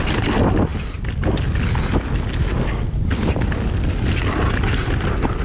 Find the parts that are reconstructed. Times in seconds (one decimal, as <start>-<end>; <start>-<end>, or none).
none

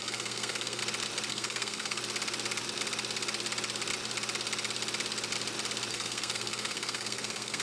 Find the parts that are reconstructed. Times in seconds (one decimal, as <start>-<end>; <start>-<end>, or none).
0.0-0.8; 1.3-2.0; 5.9-7.6

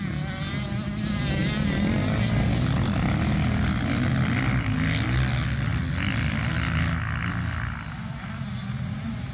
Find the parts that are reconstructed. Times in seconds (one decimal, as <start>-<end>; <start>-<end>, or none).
none

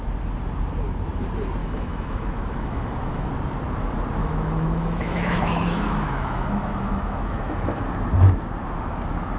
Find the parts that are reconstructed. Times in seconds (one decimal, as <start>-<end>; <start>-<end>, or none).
1.6-3.3; 4.2-7.8

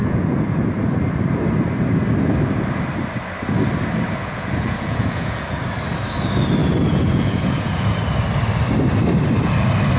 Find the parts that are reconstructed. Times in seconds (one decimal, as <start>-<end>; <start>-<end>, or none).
0.0-0.6; 4.2-5.6; 6.6-8.0

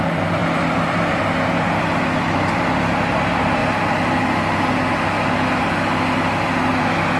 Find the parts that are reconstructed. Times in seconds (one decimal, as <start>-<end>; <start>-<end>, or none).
none

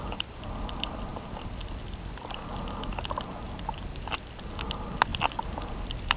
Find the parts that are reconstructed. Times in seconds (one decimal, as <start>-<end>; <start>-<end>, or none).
none

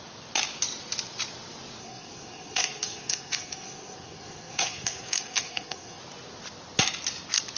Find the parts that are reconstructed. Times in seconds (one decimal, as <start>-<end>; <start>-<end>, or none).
1.8-6.0